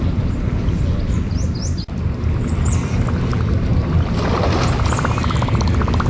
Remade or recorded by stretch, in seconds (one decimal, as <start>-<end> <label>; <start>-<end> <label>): 0.0-6.1 recorded